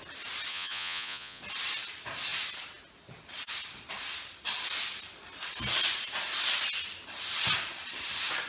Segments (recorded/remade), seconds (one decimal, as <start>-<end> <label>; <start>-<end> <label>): 0.0-0.5 recorded; 0.5-1.4 remade; 1.4-8.5 recorded